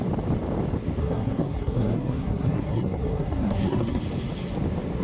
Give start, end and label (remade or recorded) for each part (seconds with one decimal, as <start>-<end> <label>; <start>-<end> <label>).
0.0-1.0 recorded; 1.0-4.0 remade; 4.0-5.0 recorded